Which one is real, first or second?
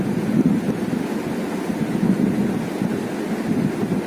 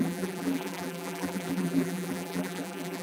first